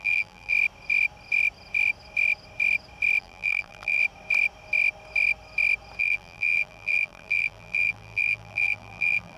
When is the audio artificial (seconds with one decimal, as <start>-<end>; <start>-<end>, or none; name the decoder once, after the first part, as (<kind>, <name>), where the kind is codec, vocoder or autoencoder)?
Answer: 0.0-0.5 (vocoder, BigVGAN v2); 3.2-4.0; 6.0-9.4